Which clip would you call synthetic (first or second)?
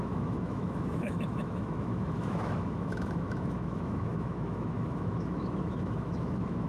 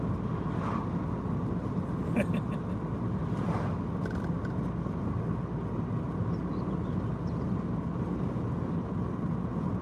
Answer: first